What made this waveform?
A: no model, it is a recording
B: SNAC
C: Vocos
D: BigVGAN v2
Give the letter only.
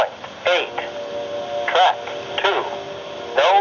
A